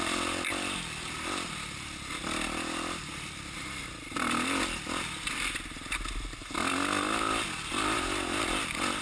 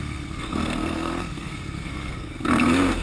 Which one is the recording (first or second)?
first